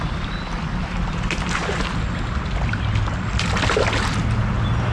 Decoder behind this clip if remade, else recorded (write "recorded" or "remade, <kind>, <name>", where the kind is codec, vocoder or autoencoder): recorded